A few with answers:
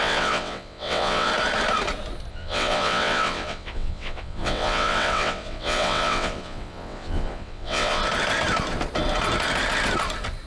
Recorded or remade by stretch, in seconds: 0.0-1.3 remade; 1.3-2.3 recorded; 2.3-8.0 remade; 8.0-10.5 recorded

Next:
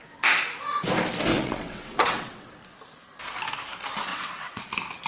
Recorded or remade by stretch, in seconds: 0.0-1.3 recorded; 1.3-2.5 remade; 2.5-4.1 recorded; 4.1-4.6 remade; 4.6-5.1 recorded

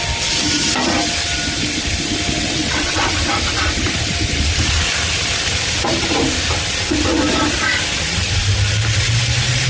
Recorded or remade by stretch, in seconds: 0.0-2.4 recorded; 2.4-3.0 remade; 3.0-9.7 recorded

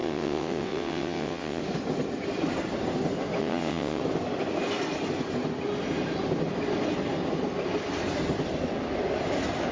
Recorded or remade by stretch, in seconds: 0.0-1.6 remade; 1.6-3.4 recorded; 3.4-4.0 remade; 4.0-9.7 recorded

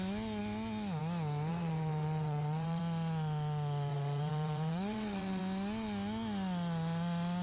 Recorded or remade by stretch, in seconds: 0.0-1.5 recorded; 1.5-2.8 remade; 2.8-3.9 recorded; 3.9-5.4 remade; 5.4-7.4 recorded